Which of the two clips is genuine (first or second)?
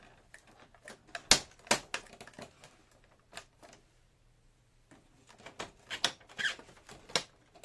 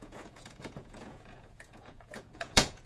first